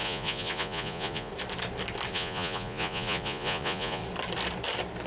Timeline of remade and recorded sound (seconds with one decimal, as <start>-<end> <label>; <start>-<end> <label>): 0.0-1.3 remade; 1.3-2.1 recorded; 2.1-4.0 remade; 4.0-5.1 recorded